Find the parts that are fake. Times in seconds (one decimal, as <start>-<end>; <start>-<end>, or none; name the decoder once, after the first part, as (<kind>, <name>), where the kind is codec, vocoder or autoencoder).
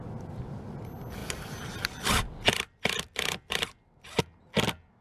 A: 1.2-4.2 (vocoder, BigVGAN v2)